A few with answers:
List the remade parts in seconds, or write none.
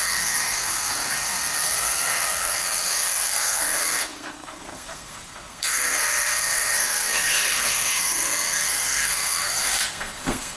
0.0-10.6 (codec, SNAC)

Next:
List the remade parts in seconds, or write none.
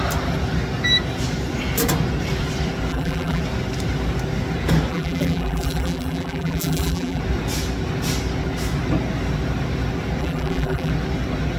2.9-3.4 (vocoder, BigVGAN v2); 4.9-7.2; 10.2-10.9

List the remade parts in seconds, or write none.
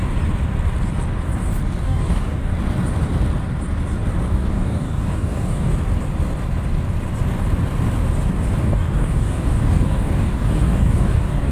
1.8-2.5 (codec, DAC); 4.3-5.7; 8.6-11.5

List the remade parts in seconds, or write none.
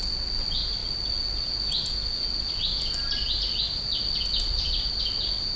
none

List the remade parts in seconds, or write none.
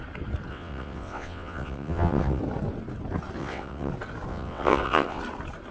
0.5-2.4 (vocoder, WaveNeXt); 3.4-3.9; 4.3-5.2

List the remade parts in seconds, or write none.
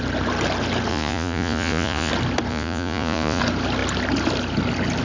0.9-2.1 (vocoder, Vocos); 2.5-3.4